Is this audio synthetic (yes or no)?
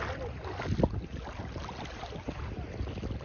no